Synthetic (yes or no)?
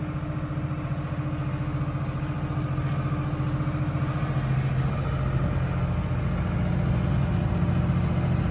no